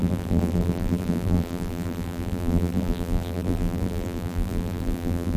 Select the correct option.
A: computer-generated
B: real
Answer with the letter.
A